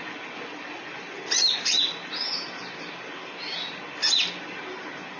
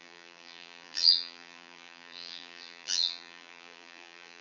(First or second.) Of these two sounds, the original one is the first